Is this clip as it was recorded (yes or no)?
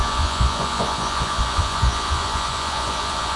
no